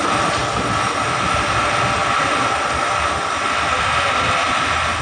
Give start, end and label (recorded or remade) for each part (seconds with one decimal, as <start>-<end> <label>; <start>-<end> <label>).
0.0-5.0 recorded